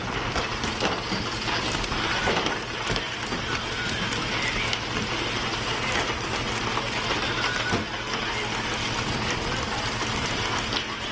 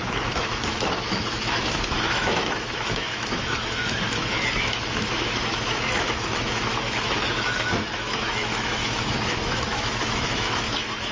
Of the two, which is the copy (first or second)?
second